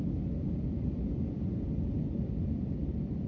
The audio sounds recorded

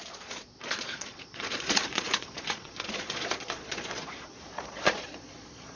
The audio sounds remade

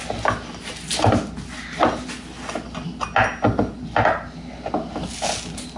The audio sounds recorded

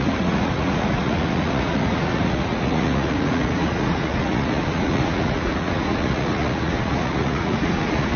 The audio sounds remade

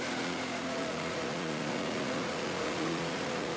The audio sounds remade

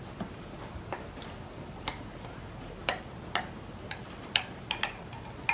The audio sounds recorded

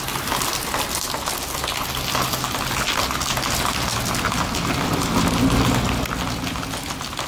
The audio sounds recorded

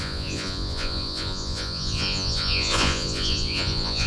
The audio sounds remade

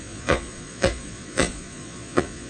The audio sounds remade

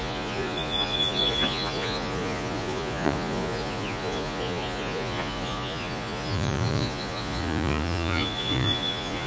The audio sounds remade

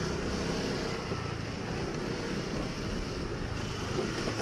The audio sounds recorded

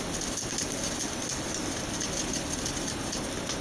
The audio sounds recorded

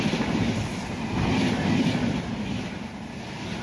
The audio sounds recorded